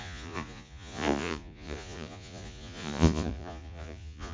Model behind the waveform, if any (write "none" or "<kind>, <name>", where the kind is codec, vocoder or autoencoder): vocoder, Vocos